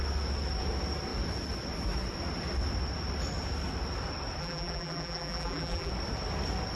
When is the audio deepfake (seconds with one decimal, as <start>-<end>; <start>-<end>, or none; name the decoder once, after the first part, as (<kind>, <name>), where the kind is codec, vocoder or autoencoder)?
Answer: 4.4-5.9 (vocoder, BigVGAN v2)